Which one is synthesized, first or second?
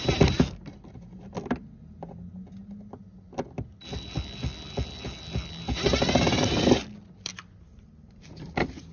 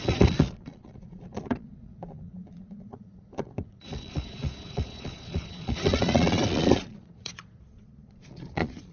second